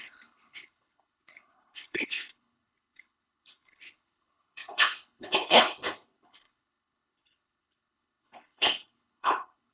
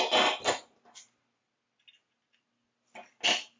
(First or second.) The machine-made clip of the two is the first